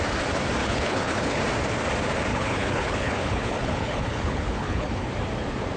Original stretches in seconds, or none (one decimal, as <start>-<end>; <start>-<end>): 0.0-0.6; 1.4-2.3; 5.1-5.8